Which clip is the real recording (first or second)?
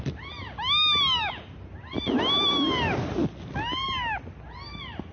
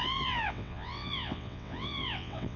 first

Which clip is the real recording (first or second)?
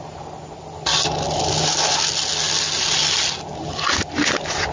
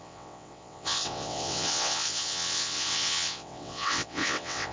first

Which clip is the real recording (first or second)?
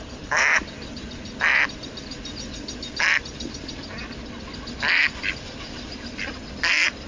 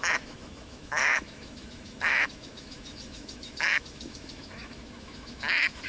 first